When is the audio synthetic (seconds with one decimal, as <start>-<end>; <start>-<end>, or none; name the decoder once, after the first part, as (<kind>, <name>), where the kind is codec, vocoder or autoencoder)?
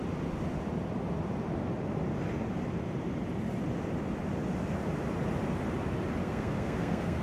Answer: 6.2-7.2 (codec, SNAC)